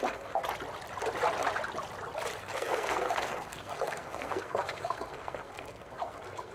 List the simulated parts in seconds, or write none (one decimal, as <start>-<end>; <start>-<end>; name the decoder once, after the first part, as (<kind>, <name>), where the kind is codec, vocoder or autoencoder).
0.0-0.4 (codec, SNAC); 2.4-6.5